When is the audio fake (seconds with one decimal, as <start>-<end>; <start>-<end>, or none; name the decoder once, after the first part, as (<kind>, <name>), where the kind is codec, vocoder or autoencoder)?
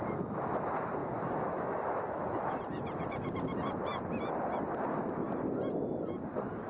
1.0-2.6 (autoencoder, DAC-VAE)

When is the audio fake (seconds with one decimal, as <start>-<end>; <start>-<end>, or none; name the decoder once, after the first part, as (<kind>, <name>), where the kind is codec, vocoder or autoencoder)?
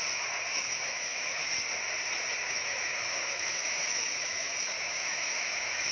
0.5-1.5 (autoencoder, DAC-VAE); 2.4-5.9